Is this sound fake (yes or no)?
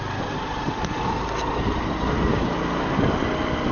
no